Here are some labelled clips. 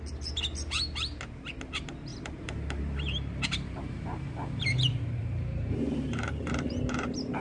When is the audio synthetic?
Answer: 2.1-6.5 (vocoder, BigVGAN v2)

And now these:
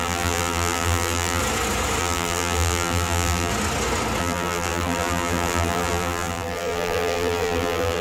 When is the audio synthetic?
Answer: 0.0-1.4 (vocoder, BigVGAN v2); 2.0-3.5; 4.2-8.0